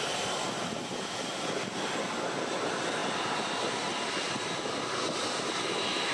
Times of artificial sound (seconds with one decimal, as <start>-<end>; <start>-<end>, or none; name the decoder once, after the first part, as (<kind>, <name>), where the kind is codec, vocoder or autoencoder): none